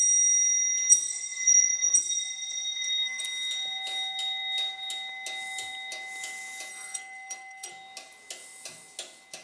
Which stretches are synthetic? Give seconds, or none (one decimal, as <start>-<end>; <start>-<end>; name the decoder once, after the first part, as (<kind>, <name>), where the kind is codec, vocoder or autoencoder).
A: 0.9-3.2 (codec, SNAC); 6.7-7.7